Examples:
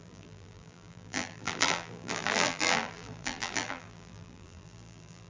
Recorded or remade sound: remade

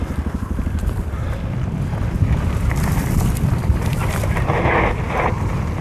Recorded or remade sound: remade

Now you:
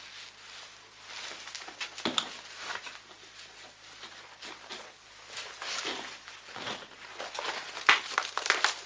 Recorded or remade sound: recorded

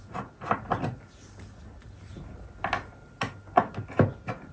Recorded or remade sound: recorded